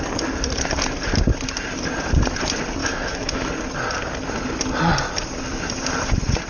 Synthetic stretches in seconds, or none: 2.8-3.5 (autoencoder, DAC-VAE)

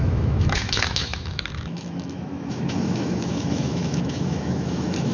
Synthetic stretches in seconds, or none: 0.0-5.1 (autoencoder, DAC-VAE)